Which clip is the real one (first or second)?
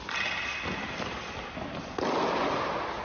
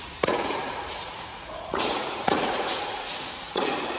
first